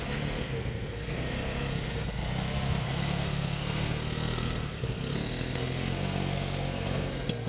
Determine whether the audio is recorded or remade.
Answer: remade